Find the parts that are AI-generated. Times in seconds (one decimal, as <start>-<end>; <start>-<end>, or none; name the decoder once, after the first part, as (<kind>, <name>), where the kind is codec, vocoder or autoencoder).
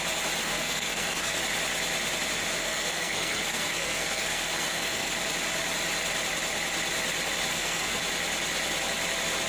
0.4-1.4 (codec, SNAC); 2.6-5.1; 7.5-8.0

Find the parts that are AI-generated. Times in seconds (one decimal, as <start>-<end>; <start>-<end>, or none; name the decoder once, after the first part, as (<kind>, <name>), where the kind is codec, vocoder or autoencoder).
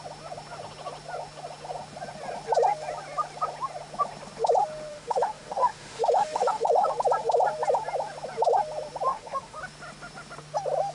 4.9-6.9 (autoencoder, DAC-VAE); 9.1-9.6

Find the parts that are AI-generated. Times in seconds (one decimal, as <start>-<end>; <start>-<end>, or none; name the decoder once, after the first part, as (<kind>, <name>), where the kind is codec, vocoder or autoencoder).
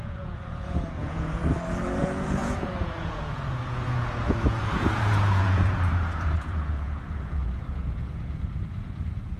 0.0-1.4 (vocoder, Vocos); 2.0-9.4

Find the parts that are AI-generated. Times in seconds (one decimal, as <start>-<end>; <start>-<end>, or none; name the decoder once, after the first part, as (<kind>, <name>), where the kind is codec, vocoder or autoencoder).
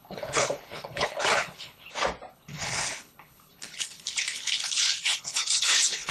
0.0-1.9 (codec, HILCodec); 2.3-6.1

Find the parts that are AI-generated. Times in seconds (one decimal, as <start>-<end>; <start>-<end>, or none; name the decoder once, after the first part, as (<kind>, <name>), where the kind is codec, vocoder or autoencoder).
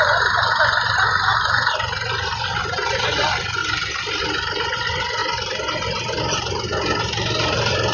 none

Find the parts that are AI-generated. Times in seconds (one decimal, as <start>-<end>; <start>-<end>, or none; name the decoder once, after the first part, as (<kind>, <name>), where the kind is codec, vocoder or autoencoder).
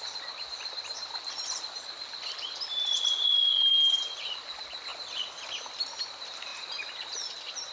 0.0-3.5 (vocoder, BigVGAN v2); 4.1-4.9; 5.8-6.5